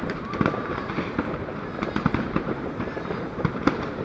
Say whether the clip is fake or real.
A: fake